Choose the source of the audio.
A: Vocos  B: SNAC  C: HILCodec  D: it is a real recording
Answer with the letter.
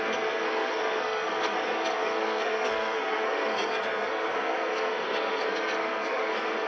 B